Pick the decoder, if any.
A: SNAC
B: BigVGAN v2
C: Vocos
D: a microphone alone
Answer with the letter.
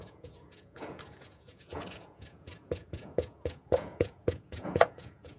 C